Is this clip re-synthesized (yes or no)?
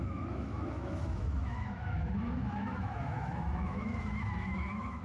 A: yes